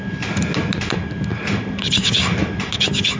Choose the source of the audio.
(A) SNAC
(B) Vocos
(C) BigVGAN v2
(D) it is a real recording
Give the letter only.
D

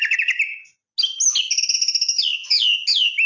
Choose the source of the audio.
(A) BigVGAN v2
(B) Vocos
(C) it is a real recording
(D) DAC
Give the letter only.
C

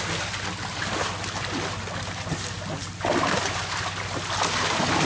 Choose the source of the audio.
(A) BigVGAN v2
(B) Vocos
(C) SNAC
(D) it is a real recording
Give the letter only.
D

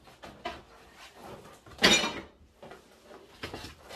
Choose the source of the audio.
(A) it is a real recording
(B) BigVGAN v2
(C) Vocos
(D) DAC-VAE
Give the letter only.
A